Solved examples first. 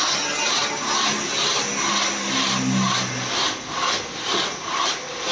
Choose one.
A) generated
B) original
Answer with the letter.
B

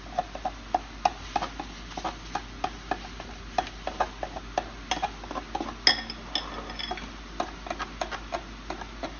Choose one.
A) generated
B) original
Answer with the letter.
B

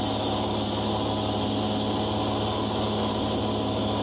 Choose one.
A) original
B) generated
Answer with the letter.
A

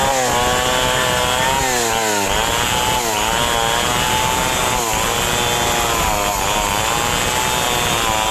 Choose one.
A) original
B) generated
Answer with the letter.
A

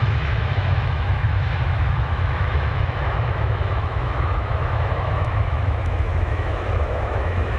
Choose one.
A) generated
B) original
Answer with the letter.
A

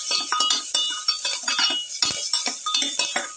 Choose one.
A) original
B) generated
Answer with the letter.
A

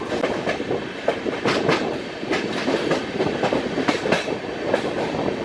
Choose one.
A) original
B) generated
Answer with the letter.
A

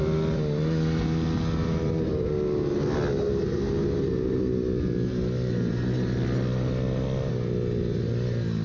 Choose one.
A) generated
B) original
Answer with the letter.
B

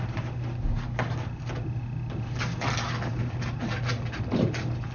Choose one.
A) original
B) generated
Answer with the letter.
A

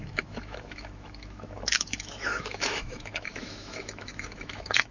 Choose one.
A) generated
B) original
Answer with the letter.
A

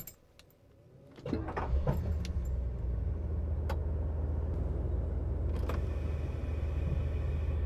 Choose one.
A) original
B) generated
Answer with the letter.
A